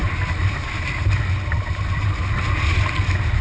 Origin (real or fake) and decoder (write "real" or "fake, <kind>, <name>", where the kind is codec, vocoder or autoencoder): real